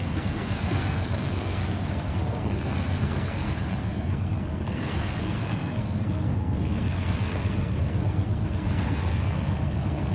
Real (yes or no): no